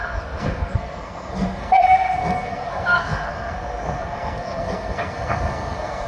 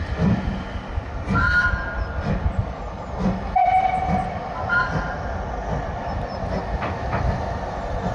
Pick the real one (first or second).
second